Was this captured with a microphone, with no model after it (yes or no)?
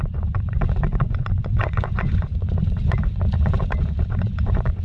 no